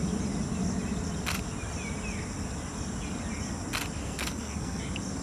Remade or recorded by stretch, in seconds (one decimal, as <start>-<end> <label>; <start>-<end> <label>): 0.0-4.0 recorded; 4.0-4.8 remade; 4.8-5.2 recorded